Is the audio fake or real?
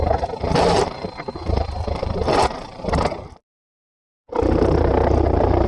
fake